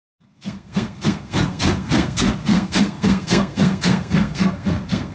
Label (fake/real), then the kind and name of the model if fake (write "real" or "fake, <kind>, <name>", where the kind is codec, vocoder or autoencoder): fake, codec, SNAC